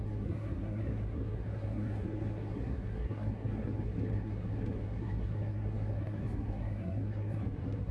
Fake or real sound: fake